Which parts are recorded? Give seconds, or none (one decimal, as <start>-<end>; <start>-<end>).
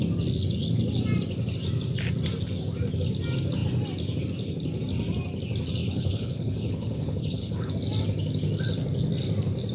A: 0.0-5.8; 7.7-9.7